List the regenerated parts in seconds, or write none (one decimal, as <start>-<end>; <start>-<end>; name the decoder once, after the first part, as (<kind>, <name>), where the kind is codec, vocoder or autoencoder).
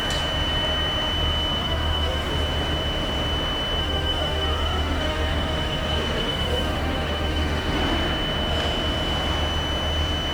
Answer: 1.6-2.3 (autoencoder, DAC-VAE); 3.8-7.8